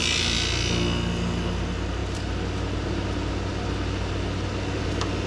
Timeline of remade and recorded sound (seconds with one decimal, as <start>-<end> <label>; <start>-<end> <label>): 0.0-5.3 recorded